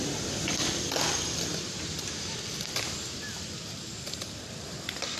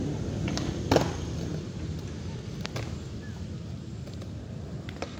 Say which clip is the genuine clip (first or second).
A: second